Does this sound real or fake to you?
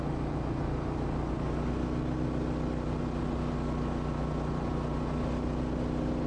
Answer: real